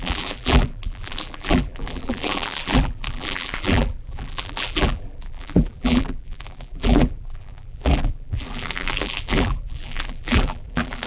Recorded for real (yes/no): no